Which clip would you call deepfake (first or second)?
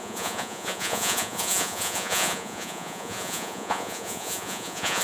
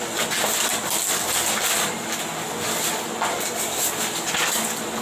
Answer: first